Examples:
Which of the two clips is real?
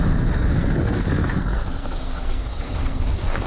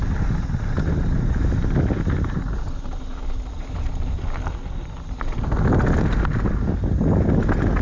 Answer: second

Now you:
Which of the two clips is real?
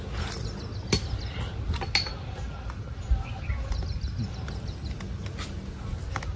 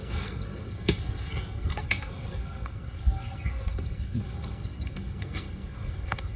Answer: first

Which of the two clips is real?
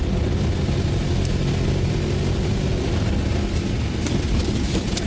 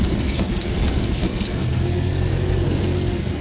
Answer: first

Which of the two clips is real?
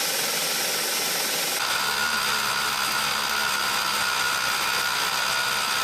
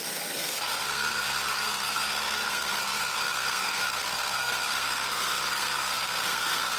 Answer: first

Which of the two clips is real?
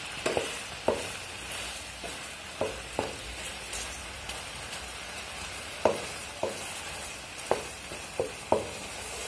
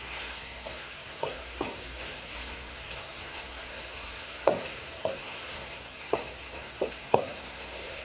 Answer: first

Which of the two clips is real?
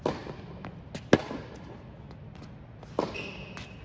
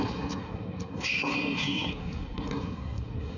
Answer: first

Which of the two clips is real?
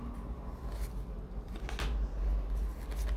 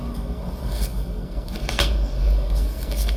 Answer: first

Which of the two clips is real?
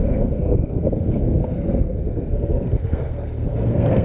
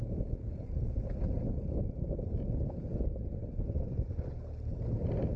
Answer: second